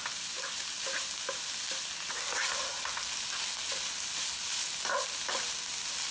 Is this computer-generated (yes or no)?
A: no